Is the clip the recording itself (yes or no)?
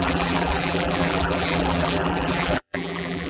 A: no